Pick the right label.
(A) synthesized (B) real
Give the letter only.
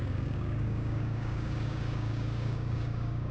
A